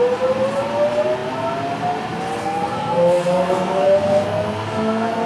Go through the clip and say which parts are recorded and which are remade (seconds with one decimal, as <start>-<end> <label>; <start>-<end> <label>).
0.0-2.4 recorded; 2.4-5.3 remade